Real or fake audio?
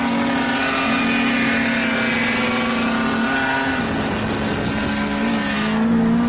real